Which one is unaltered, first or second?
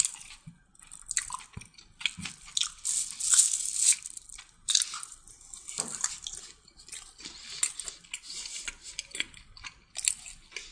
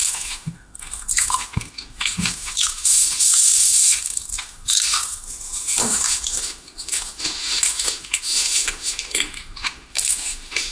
first